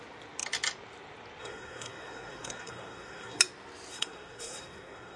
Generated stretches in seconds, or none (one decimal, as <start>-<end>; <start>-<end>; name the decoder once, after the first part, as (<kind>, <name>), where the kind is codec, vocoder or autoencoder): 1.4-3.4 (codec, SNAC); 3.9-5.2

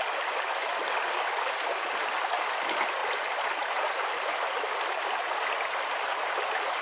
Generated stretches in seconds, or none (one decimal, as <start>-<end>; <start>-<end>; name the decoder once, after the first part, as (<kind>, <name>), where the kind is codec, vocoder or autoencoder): none

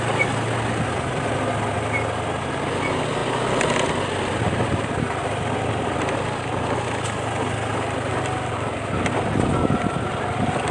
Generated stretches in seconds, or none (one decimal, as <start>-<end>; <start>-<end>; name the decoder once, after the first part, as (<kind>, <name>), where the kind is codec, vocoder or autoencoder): none

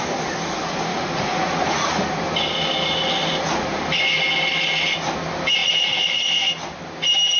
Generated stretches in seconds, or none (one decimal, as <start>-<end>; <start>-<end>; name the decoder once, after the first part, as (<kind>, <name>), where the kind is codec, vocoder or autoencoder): 0.9-1.9 (vocoder, Vocos); 5.6-6.2

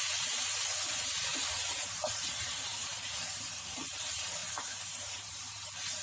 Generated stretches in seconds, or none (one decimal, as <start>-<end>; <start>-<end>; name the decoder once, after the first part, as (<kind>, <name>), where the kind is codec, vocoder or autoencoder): 0.0-4.4 (vocoder, BigVGAN v2); 5.3-6.0

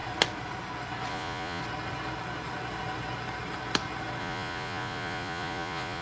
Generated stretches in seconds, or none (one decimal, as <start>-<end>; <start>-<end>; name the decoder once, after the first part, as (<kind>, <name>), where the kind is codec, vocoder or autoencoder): 1.1-1.6 (vocoder, Vocos); 4.2-6.0

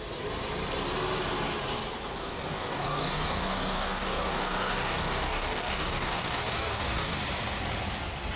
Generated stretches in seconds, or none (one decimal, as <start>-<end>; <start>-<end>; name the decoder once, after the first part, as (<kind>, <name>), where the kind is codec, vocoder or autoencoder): 2.2-7.2 (codec, DAC)

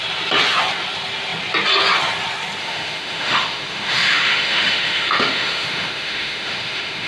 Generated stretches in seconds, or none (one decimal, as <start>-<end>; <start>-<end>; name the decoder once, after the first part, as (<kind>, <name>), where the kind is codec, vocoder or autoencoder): 2.6-7.1 (autoencoder, DAC-VAE)